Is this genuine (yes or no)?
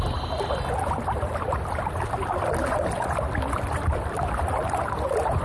yes